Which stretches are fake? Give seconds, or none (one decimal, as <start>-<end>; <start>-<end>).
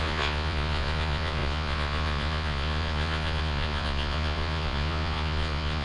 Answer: 0.0-5.8